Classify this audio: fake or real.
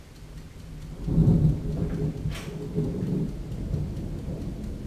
real